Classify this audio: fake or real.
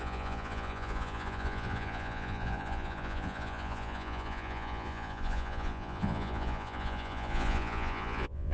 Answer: fake